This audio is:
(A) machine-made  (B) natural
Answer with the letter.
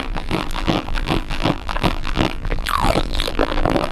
A